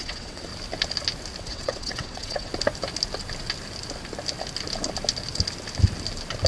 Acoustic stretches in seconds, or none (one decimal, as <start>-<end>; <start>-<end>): 0.5-1.4; 2.5-6.5